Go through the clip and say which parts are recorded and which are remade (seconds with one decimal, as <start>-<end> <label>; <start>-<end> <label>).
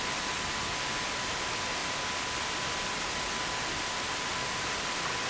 0.0-5.3 recorded